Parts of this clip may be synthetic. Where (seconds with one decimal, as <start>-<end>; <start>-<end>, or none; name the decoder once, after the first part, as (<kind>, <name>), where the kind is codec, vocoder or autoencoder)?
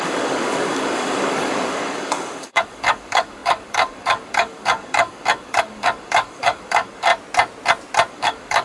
0.0-7.1 (codec, DAC); 8.1-8.6